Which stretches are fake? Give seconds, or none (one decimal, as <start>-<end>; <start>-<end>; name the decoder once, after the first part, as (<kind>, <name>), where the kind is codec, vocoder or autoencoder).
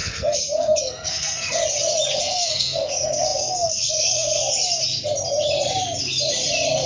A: 0.0-1.6 (codec, SNAC); 2.2-4.4